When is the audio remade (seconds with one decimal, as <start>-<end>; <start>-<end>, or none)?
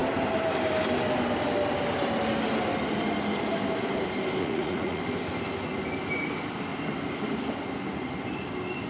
4.4-5.0